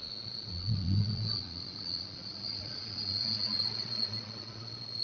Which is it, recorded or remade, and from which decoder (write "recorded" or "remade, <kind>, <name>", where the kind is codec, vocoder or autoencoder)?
remade, vocoder, Vocos